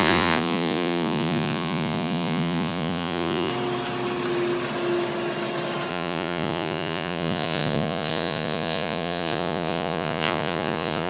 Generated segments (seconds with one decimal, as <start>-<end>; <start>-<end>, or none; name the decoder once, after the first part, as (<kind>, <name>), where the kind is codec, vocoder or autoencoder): 0.0-3.5 (vocoder, Vocos); 5.9-11.1